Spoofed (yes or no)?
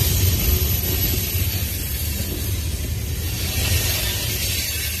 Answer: no